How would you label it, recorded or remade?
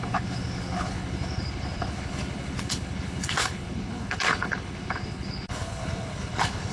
remade